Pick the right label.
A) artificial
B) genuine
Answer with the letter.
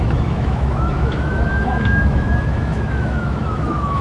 A